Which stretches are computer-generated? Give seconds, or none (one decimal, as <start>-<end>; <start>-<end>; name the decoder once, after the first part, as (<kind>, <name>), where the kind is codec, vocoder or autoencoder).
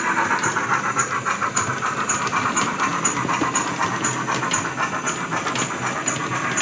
none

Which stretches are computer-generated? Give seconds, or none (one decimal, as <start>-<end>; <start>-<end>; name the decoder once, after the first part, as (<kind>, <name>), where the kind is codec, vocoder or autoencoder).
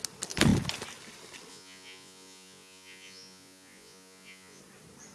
1.5-4.6 (vocoder, Vocos)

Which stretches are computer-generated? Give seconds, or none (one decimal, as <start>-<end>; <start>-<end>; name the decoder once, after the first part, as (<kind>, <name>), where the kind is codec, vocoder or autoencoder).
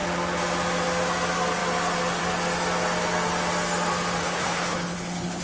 4.2-5.4 (codec, HILCodec)